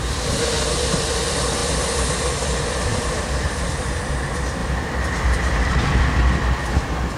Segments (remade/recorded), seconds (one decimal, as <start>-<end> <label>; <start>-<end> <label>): 0.0-2.9 recorded; 2.9-4.0 remade; 4.0-4.6 recorded; 4.6-6.0 remade; 6.0-7.2 recorded